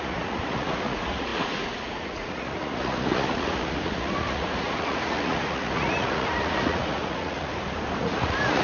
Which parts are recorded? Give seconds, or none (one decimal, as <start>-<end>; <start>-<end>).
7.5-8.0